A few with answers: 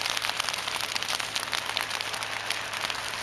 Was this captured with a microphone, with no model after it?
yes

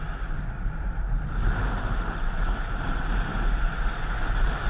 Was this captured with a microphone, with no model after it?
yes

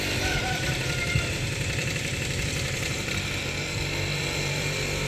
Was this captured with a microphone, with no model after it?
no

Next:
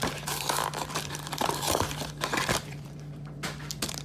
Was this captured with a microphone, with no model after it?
no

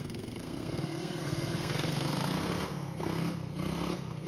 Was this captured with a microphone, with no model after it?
no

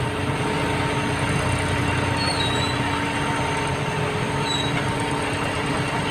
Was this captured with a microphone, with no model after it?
yes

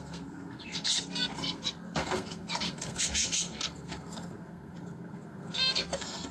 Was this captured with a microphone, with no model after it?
no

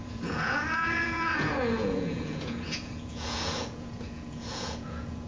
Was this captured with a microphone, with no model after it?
no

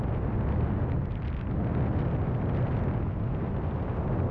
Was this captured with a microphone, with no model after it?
yes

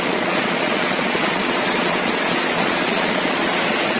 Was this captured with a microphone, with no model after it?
no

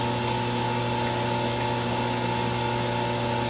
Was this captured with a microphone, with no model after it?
yes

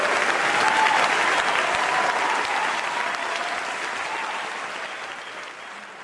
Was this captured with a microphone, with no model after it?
yes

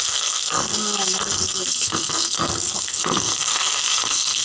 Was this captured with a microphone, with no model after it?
no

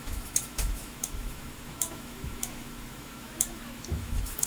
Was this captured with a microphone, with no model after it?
no